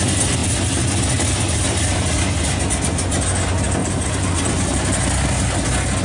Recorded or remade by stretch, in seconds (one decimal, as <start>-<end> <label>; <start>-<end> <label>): 0.0-3.8 recorded; 3.8-4.9 remade; 4.9-6.0 recorded